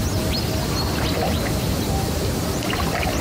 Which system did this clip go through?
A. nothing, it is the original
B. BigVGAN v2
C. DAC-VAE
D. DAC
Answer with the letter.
A